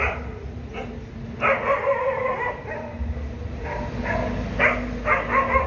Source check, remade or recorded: recorded